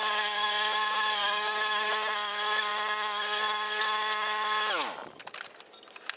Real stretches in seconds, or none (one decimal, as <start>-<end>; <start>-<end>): 0.0-1.2; 1.9-6.2